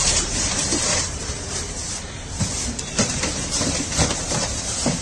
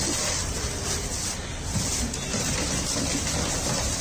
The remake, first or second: first